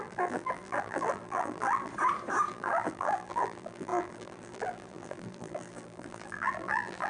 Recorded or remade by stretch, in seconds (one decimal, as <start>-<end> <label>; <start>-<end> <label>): 0.0-1.9 remade; 1.9-2.5 recorded; 2.5-7.1 remade